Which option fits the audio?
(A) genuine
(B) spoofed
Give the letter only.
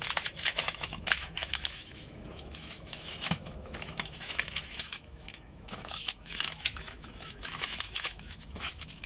B